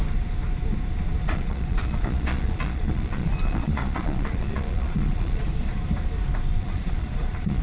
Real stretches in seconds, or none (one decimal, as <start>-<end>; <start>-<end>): 0.0-1.2; 5.5-6.6